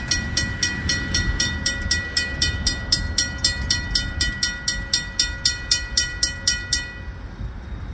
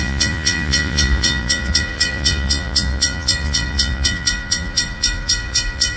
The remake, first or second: second